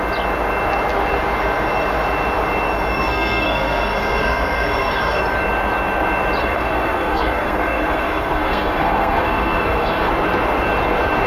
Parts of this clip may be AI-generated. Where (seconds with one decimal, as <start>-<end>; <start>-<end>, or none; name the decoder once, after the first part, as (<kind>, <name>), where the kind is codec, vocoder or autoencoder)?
2.9-5.2 (codec, SNAC); 6.4-10.1